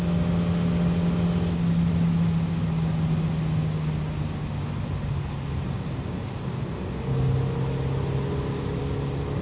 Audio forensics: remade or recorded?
recorded